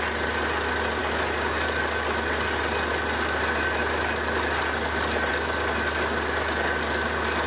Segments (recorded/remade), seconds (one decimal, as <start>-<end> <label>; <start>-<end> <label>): 0.0-7.5 recorded